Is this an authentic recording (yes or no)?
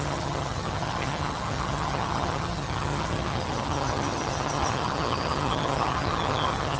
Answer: no